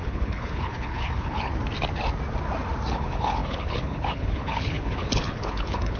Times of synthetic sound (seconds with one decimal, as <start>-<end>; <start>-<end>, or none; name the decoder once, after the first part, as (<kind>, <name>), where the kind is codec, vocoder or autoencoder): 0.0-1.5 (codec, HILCodec); 2.9-6.0